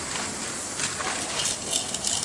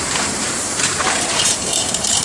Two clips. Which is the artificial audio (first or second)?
second